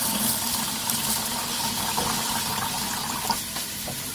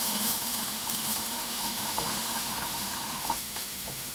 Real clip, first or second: first